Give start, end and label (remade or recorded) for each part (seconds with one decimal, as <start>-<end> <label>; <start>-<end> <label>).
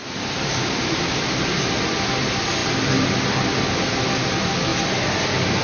0.0-1.9 remade; 1.9-5.6 recorded